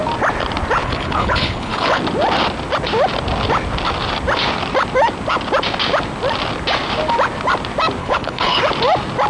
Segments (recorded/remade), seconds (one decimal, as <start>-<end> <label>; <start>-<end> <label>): 0.0-0.8 recorded; 0.8-2.0 remade; 2.0-8.0 recorded; 8.0-8.6 remade; 8.6-9.3 recorded